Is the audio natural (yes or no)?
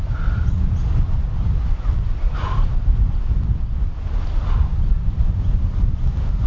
yes